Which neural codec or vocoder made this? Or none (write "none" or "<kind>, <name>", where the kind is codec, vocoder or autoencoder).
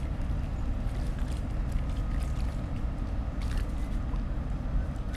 none